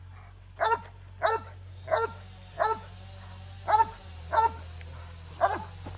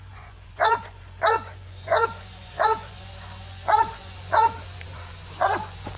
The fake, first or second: second